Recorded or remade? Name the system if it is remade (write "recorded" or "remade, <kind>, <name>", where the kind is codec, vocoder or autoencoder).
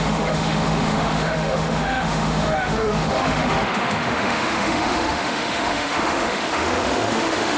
remade, autoencoder, DAC-VAE